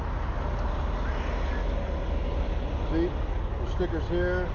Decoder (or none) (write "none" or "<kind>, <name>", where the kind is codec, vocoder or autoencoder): none